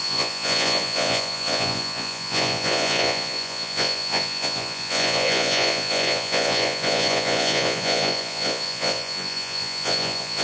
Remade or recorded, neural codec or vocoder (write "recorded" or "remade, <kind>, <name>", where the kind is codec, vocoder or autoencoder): remade, vocoder, Vocos